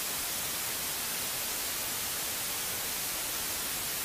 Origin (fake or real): real